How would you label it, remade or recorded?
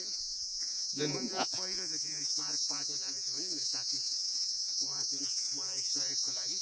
remade